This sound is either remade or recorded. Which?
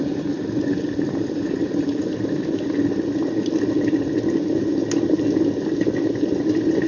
recorded